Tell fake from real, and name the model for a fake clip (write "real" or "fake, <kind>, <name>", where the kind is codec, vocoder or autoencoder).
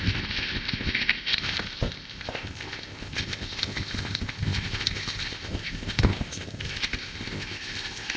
fake, codec, ZipCodec